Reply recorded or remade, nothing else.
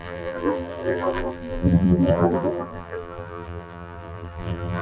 remade